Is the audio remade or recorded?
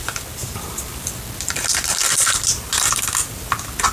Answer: remade